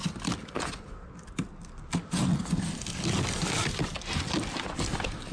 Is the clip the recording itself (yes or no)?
yes